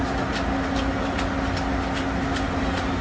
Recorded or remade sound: recorded